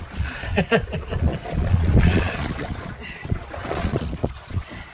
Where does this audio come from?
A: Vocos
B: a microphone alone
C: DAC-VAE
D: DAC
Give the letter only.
A